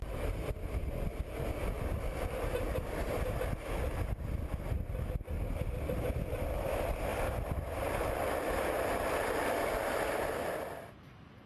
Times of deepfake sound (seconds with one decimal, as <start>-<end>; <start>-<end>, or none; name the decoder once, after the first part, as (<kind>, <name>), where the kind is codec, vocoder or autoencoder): 7.1-8.2 (vocoder, BigVGAN v2)